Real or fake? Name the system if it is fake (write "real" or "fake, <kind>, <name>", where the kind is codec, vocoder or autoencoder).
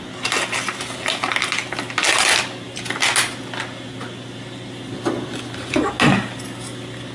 real